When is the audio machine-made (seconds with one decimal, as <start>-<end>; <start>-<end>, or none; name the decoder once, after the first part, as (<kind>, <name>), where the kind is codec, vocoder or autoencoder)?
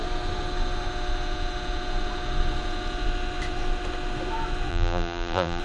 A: 4.7-5.6 (vocoder, BigVGAN v2)